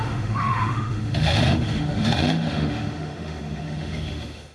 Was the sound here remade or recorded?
remade